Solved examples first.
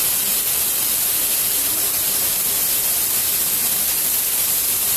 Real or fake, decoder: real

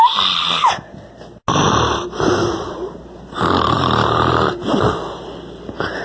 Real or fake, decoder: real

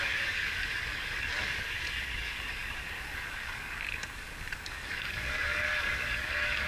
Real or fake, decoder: fake, codec, DAC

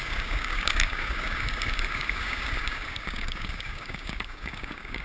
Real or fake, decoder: fake, codec, DAC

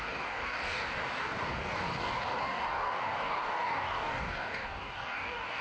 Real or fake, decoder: fake, codec, DAC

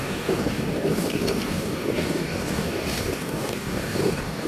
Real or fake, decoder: fake, codec, DAC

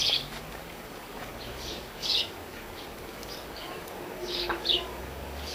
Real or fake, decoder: fake, codec, DAC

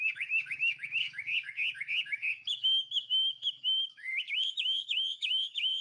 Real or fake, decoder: fake, codec, DAC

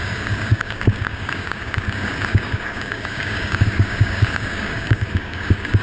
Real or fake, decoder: fake, codec, DAC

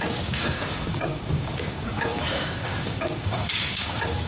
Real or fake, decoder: fake, codec, DAC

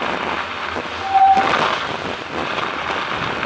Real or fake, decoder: real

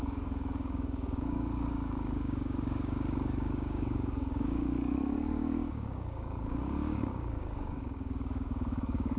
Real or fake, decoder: fake, codec, DAC